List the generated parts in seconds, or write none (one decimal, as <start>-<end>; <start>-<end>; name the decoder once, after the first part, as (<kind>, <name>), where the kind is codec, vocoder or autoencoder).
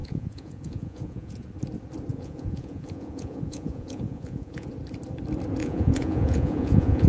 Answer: 0.0-1.4 (vocoder, Vocos); 2.1-4.7; 5.6-7.1